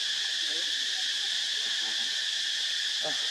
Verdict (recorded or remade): recorded